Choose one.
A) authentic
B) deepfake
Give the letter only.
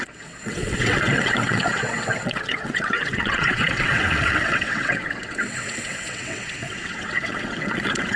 B